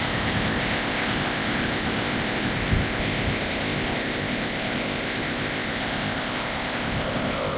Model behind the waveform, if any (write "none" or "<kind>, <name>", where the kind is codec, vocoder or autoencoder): codec, ZipCodec